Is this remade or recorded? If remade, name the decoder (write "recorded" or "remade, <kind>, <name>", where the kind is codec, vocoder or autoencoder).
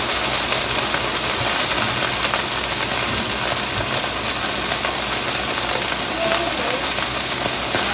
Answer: recorded